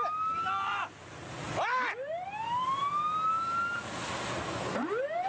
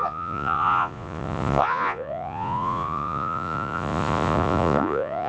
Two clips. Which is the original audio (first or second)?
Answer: first